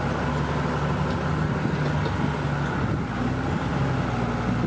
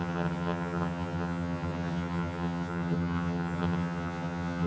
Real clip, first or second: first